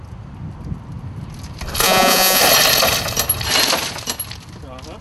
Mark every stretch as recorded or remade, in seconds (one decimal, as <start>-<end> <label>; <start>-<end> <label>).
0.0-1.8 recorded; 1.8-2.4 remade; 2.4-5.0 recorded